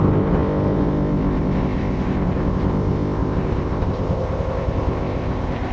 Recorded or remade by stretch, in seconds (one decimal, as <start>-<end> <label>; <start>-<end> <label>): 0.0-5.7 remade